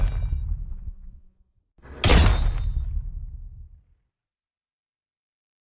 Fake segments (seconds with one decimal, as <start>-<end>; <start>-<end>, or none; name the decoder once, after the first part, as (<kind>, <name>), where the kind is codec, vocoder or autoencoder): 0.7-1.6 (vocoder, Vocos)